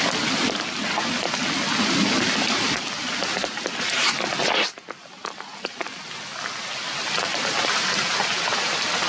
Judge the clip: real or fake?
real